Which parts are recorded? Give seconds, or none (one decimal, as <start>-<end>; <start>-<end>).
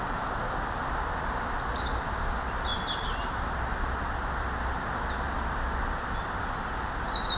0.0-7.4